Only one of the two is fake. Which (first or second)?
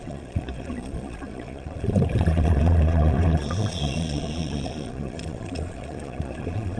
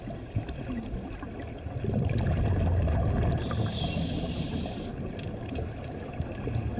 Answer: first